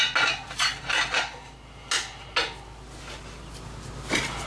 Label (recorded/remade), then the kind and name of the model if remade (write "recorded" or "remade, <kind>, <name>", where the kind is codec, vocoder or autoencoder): recorded